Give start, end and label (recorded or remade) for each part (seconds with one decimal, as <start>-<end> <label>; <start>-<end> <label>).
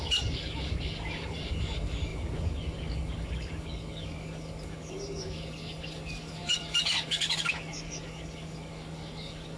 0.0-9.6 remade